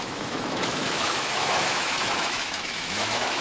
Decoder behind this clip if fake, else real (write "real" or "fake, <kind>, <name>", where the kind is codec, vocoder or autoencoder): fake, autoencoder, DAC-VAE